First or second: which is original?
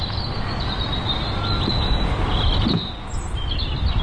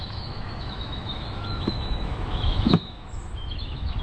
first